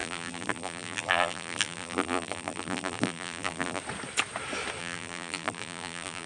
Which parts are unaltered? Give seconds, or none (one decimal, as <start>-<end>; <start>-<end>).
3.8-4.8